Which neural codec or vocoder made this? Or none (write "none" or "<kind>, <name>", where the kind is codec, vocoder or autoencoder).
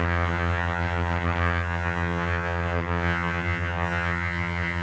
vocoder, HiFi-GAN